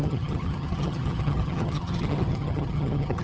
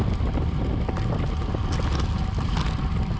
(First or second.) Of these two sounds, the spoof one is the first